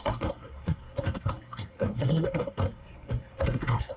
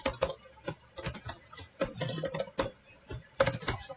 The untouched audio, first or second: second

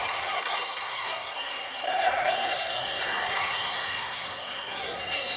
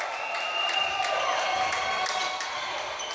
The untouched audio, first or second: second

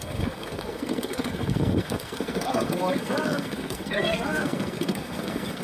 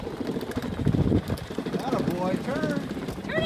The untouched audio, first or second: second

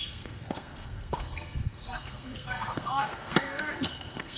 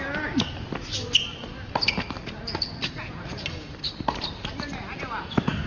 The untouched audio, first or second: second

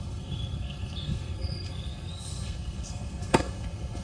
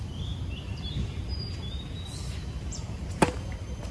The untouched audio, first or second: second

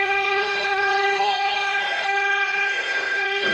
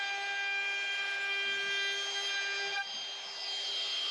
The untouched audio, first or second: second